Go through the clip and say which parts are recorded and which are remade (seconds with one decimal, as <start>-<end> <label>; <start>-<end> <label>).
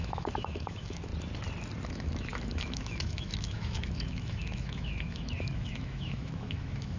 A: 0.0-1.1 remade; 1.1-1.9 recorded; 1.9-7.0 remade